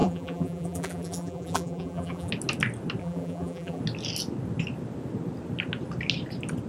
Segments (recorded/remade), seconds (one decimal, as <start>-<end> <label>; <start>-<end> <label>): 0.0-2.3 remade; 2.3-3.0 recorded; 3.0-3.8 remade; 3.8-6.7 recorded